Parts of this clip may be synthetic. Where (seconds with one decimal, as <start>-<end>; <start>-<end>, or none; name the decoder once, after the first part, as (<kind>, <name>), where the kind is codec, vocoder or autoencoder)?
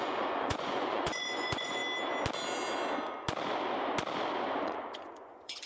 0.0-1.8 (vocoder, Vocos); 4.5-5.7